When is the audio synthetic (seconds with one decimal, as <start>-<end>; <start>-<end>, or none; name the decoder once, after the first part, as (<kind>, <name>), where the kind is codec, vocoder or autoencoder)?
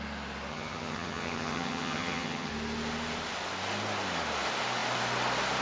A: 0.5-2.5 (vocoder, HiFi-GAN)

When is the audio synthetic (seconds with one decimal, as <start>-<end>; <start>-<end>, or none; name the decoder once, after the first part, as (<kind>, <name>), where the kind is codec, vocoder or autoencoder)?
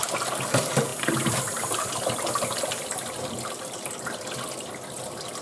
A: none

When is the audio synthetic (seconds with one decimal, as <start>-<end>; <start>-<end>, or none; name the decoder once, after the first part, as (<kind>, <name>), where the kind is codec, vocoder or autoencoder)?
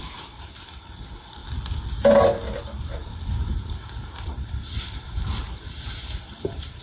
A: 0.0-1.4 (vocoder, BigVGAN v2); 2.6-6.8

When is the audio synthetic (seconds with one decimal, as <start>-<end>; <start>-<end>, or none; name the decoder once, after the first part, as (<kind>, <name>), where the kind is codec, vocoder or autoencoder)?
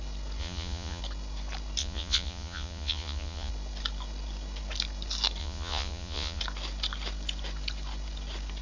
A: 0.4-1.0 (vocoder, Vocos); 1.8-3.5; 5.4-6.4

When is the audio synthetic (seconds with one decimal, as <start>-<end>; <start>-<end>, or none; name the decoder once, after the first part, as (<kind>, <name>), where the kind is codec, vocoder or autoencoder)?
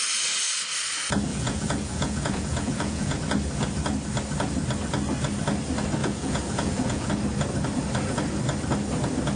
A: 1.3-3.2 (vocoder, Vocos); 6.0-7.1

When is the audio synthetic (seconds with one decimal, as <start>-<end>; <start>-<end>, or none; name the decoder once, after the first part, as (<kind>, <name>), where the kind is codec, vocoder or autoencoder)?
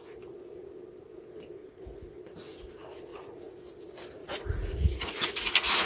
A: 1.6-2.1 (vocoder, Vocos); 3.1-3.6; 4.2-5.5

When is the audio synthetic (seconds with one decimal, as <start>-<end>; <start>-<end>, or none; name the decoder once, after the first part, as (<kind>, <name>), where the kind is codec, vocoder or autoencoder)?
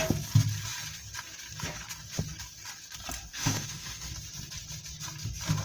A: 3.3-4.1 (autoencoder, DAC-VAE)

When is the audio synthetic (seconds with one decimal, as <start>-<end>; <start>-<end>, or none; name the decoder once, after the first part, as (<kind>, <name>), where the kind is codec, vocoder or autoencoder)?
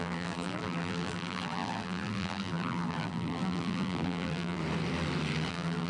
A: 0.0-4.6 (vocoder, BigVGAN v2); 5.5-5.9